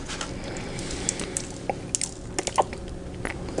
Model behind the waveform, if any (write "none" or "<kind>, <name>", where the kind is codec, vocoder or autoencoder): none